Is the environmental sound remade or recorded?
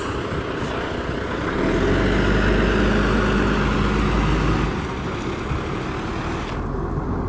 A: recorded